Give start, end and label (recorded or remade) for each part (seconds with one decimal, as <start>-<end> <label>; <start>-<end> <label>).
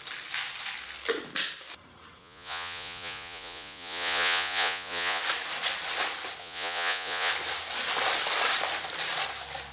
0.0-2.2 recorded; 2.2-5.2 remade; 5.2-6.4 recorded; 6.4-7.3 remade; 7.3-9.7 recorded